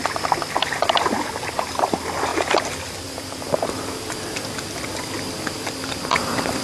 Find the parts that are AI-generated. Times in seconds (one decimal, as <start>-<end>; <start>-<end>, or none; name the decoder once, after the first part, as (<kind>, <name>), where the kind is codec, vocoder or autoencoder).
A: none